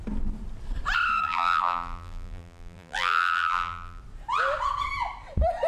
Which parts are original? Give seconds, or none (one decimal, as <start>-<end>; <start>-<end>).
0.0-1.2; 4.0-5.7